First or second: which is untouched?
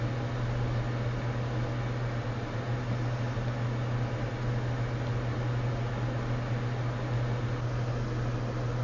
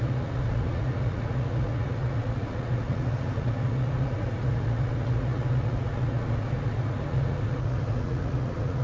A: first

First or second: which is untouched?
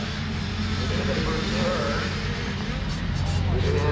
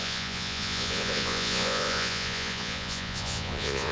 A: first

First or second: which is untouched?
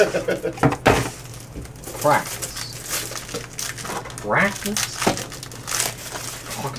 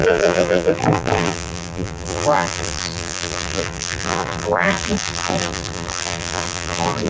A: first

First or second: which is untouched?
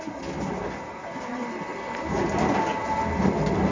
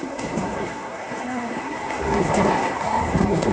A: first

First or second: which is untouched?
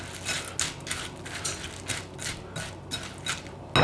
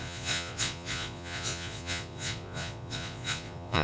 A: first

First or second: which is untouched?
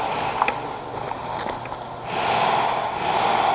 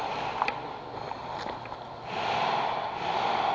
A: first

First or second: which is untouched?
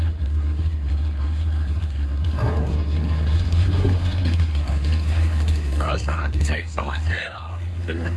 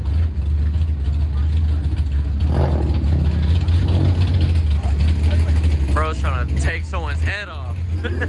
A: second